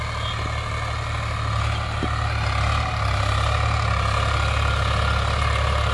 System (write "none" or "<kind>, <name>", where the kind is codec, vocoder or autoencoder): none